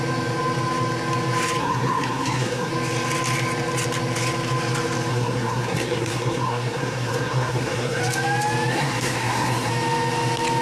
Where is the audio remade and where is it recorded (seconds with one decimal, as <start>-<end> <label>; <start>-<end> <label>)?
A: 0.0-1.6 recorded; 1.6-2.7 remade; 2.7-5.1 recorded; 5.1-8.0 remade; 8.0-8.7 recorded; 8.7-9.7 remade; 9.7-10.6 recorded